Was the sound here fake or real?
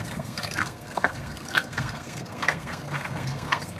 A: fake